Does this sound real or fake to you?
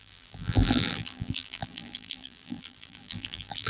fake